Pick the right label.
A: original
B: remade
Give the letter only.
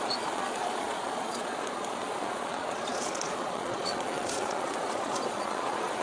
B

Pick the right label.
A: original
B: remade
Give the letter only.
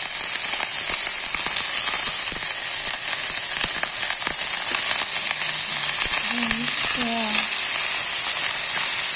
A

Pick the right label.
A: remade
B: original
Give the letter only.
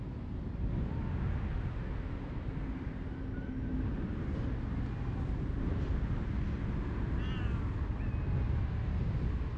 B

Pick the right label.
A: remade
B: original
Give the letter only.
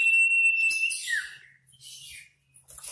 B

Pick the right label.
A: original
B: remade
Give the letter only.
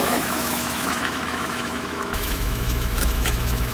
B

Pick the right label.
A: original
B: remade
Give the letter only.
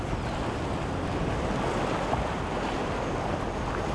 A